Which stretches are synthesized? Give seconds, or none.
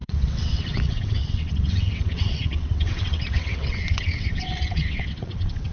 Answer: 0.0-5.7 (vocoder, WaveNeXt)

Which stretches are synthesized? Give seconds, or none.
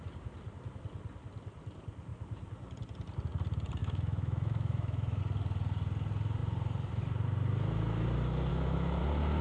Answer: 3.8-5.2 (autoencoder, DAC-VAE); 8.5-9.0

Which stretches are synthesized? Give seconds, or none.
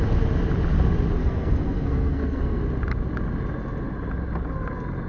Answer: 1.2-2.6 (codec, SNAC)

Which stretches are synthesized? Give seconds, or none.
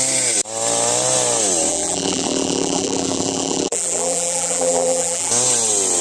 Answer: 1.7-5.3 (vocoder, BigVGAN v2)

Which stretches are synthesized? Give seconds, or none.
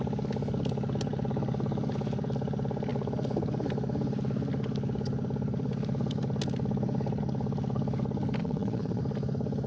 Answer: 8.4-9.0 (vocoder, Vocos)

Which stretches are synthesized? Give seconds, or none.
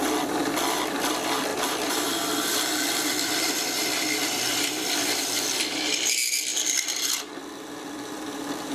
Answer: 0.0-6.5 (vocoder, BigVGAN v2); 7.5-8.7